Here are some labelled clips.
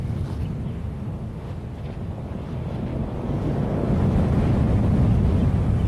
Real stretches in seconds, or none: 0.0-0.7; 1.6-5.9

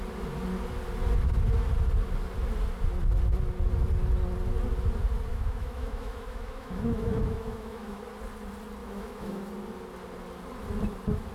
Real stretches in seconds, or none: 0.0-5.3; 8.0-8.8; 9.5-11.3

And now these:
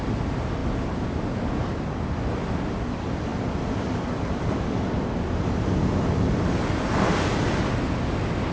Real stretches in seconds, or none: 0.0-8.5

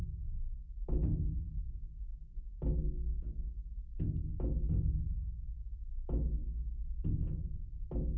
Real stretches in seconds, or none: 0.8-2.1; 3.2-8.2

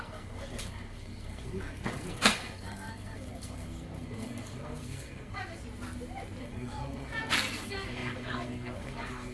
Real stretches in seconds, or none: 5.4-6.4